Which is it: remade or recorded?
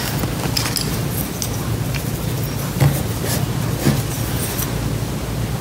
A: recorded